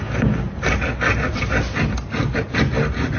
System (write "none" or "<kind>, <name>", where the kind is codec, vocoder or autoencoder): none